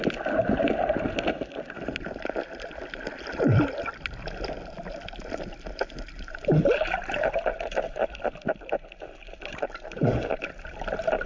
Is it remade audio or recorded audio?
recorded